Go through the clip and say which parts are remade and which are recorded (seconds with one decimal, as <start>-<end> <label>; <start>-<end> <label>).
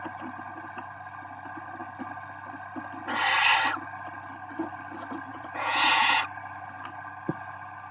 0.0-5.3 recorded; 5.3-6.2 remade; 6.2-7.9 recorded